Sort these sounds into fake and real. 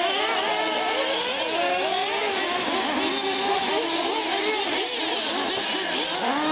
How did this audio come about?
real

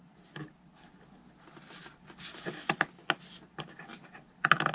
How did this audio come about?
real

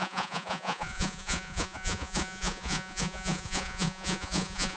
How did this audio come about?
fake